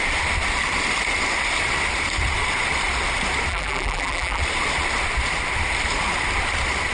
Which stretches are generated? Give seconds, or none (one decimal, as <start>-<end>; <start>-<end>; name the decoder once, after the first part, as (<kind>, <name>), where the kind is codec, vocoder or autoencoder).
3.5-4.4 (vocoder, BigVGAN v2)